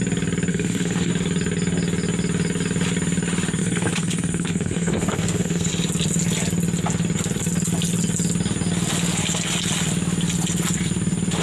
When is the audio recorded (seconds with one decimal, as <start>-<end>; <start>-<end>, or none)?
0.0-0.5; 1.1-3.6; 5.7-11.4